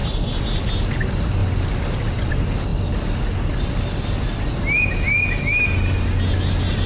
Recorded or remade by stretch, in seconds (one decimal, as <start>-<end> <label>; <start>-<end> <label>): 0.0-6.9 recorded